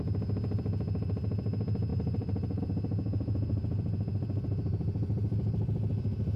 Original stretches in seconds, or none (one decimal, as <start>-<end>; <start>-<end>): 0.0-1.9; 2.6-6.4